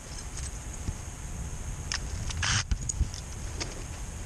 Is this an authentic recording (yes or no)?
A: no